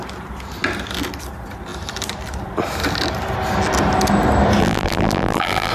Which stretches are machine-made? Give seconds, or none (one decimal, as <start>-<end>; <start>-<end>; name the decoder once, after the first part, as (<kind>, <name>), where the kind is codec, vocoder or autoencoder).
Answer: 4.6-5.7 (vocoder, BigVGAN v2)